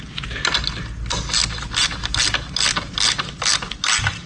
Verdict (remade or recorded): recorded